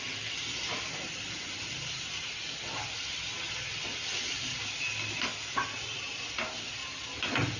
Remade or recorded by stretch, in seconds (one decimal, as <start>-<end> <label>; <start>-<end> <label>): 0.0-7.6 recorded